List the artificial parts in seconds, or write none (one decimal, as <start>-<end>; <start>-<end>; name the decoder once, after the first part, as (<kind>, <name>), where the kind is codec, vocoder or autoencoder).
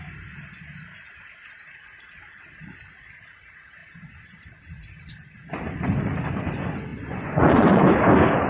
6.9-7.8 (vocoder, Vocos)